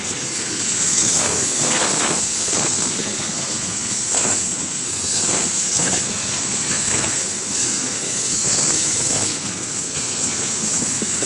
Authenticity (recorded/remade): remade